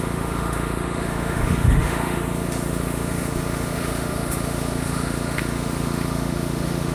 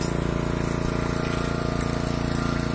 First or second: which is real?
second